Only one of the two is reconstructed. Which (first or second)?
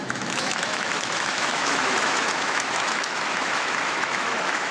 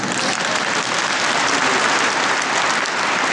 first